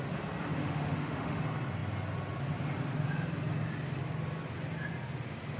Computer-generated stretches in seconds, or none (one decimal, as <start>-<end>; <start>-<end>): 0.6-1.4